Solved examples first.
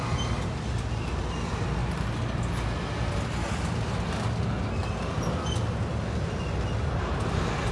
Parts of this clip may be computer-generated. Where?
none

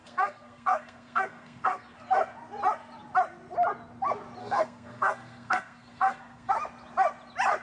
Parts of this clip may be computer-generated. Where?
0.0-2.0 (codec, SNAC); 4.4-6.5

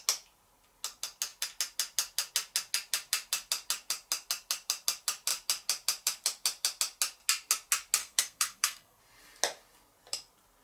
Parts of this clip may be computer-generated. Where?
8.0-9.0 (codec, SNAC)

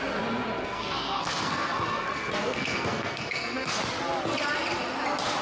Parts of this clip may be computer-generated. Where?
0.6-3.8 (codec, SNAC)

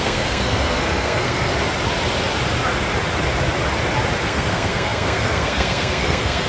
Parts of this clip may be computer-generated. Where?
0.0-1.5 (codec, SNAC); 4.2-6.5

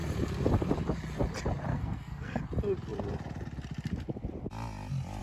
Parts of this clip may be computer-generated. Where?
1.7-2.4 (codec, SNAC)

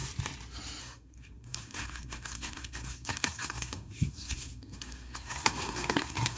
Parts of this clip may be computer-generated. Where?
0.8-6.4 (codec, SNAC)

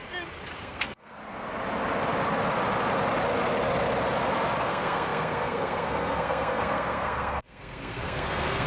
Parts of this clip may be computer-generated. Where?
0.6-1.2 (codec, SNAC); 4.6-8.7